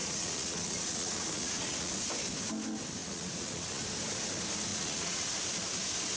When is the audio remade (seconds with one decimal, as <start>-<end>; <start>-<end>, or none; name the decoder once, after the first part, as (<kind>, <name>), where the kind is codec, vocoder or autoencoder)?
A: 0.0-1.9 (vocoder, Vocos); 3.0-3.8; 4.7-5.4